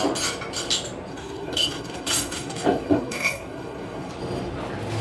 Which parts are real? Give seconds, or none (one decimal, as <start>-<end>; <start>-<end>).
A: 0.0-1.1; 4.1-5.0